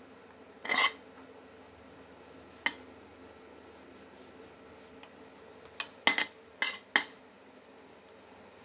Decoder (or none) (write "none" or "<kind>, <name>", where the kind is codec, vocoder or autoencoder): none